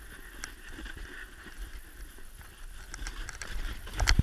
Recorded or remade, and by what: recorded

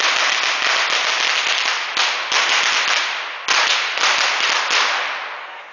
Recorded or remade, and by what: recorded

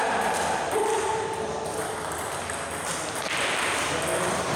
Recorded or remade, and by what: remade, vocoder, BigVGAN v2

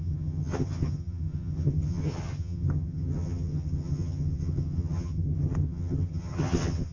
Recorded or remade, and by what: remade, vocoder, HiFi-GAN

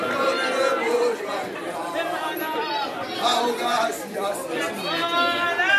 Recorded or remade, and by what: recorded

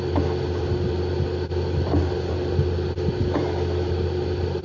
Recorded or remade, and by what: recorded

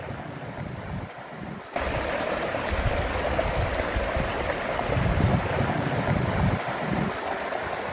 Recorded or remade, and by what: recorded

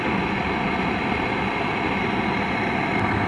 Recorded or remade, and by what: recorded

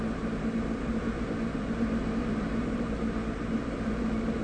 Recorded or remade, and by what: remade, vocoder, BigVGAN v2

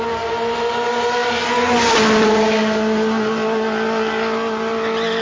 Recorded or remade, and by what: recorded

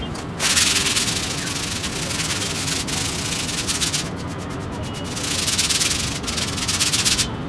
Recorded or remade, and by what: recorded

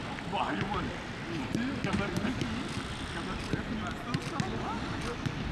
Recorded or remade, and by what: recorded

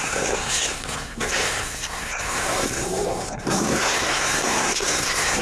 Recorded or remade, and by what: remade, codec, SNAC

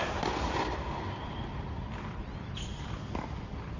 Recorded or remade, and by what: recorded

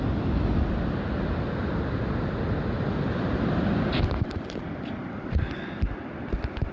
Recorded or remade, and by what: recorded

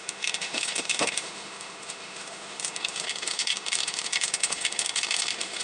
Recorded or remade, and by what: remade, autoencoder, DAC-VAE